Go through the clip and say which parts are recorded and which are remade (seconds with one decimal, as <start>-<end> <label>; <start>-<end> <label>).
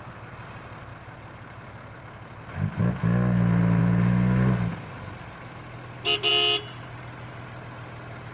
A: 0.0-8.3 recorded